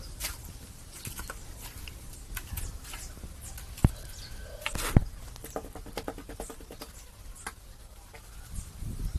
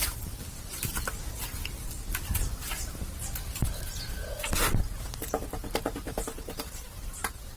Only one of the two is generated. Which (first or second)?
second